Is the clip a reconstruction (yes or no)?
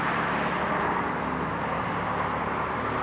no